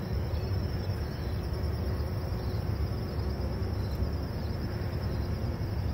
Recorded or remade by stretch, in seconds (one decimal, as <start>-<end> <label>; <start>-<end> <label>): 0.0-5.9 recorded